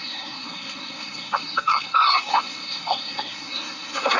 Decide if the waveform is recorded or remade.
remade